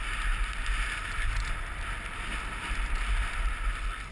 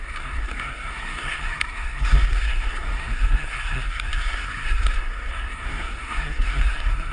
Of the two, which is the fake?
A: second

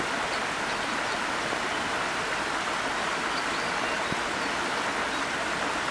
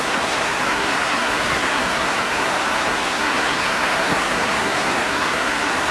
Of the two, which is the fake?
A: second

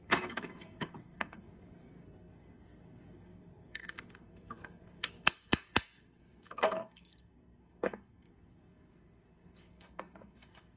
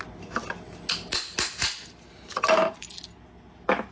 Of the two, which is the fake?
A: first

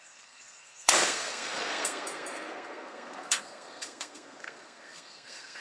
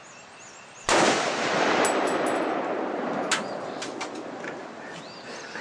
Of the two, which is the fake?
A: first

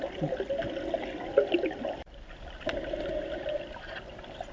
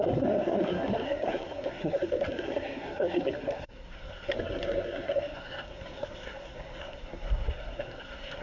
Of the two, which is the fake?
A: second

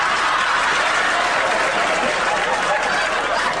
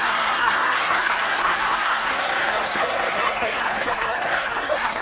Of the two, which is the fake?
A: second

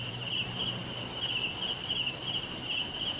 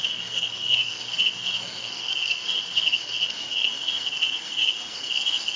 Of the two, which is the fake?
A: second